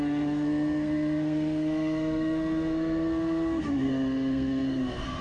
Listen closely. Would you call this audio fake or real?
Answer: fake